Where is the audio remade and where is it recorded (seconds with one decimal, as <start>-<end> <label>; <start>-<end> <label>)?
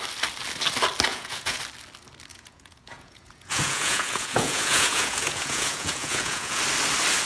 0.0-1.1 recorded; 1.1-1.6 remade; 1.6-2.3 recorded; 2.3-6.6 remade; 6.6-7.3 recorded